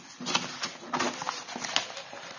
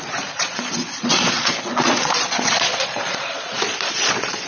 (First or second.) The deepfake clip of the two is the second